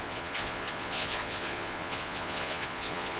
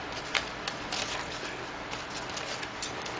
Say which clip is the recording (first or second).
second